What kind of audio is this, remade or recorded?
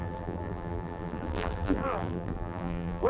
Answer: remade